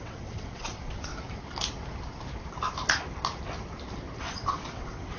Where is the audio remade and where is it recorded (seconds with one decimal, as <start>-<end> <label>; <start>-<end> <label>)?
0.0-1.1 remade; 1.1-4.2 recorded; 4.2-5.2 remade